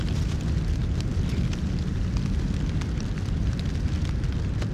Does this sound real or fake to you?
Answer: real